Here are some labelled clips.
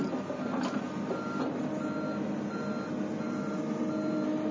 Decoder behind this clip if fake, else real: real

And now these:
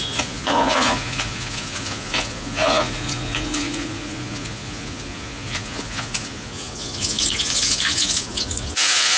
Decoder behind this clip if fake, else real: fake, vocoder, Vocos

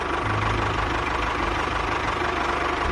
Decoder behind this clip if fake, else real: fake, vocoder, BigVGAN v2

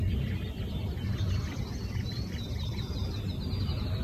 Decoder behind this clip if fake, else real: real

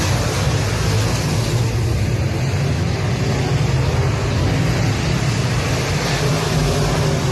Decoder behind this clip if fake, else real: real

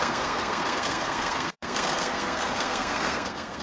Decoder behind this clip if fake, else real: fake, codec, SNAC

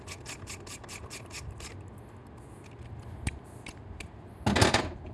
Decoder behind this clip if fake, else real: real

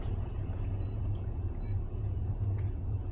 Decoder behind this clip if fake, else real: fake, vocoder, Vocos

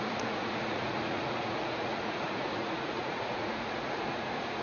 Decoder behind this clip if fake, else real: fake, vocoder, Vocos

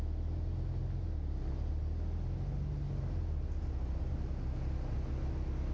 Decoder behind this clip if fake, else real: real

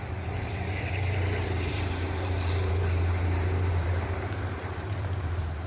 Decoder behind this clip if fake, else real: fake, vocoder, BigVGAN v2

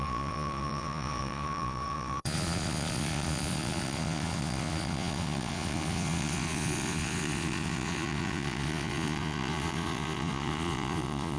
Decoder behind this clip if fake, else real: fake, vocoder, Vocos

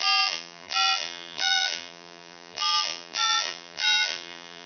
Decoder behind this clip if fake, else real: fake, vocoder, BigVGAN v2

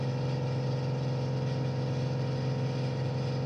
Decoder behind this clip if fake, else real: real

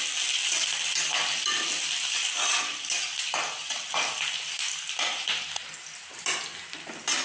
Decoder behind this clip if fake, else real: real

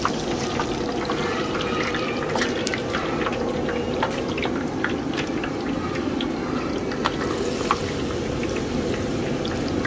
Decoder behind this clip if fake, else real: real